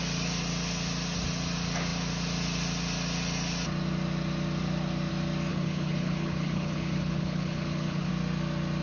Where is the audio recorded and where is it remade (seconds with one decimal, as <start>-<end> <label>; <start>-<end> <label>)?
0.0-5.5 recorded; 5.5-8.1 remade; 8.1-8.8 recorded